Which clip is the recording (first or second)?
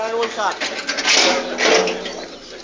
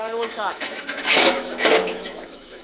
first